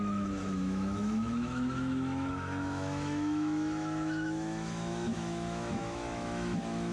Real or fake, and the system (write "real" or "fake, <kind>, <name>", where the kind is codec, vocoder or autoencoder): fake, autoencoder, DAC-VAE